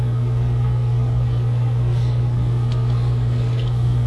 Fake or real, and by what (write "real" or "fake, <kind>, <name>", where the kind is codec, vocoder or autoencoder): fake, codec, SNAC